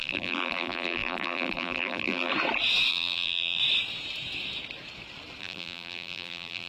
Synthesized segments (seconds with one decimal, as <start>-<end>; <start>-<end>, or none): 0.0-2.3; 2.9-3.6; 5.4-6.7